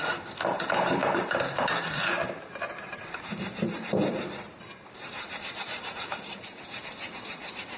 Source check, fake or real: fake